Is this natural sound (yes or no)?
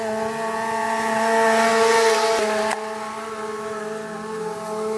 yes